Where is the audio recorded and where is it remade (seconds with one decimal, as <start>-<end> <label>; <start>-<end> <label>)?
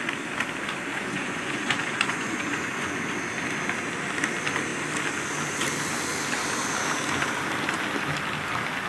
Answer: 0.0-0.9 recorded; 0.9-3.1 remade; 3.1-8.9 recorded